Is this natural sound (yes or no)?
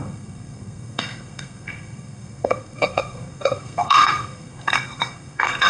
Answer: no